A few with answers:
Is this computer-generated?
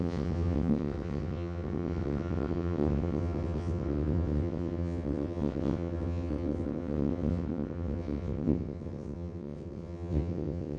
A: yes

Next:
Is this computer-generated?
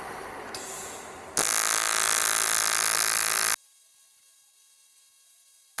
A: no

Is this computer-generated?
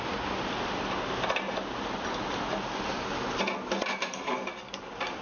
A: no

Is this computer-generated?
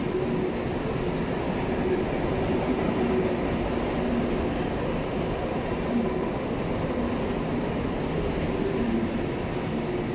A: no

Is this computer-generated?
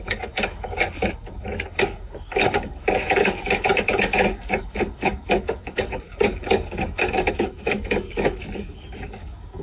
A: yes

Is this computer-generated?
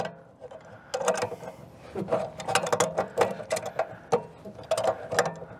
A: no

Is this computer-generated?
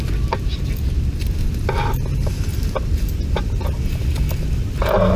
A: no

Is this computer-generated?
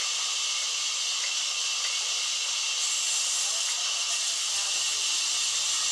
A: no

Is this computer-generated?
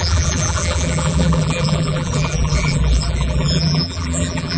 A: yes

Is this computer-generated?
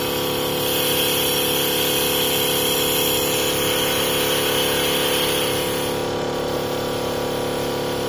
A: no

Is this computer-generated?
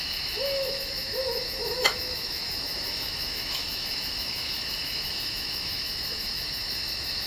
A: yes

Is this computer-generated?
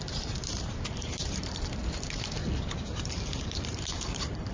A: yes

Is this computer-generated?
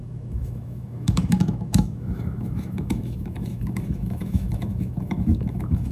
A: yes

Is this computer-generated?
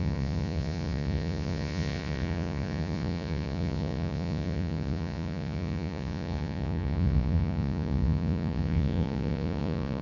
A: yes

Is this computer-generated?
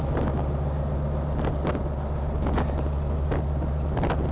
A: no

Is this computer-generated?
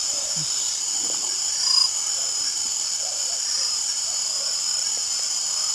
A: no